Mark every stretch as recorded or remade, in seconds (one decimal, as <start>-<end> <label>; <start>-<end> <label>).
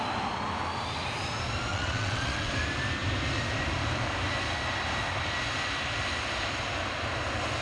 0.0-1.7 recorded; 1.7-2.5 remade; 2.5-7.6 recorded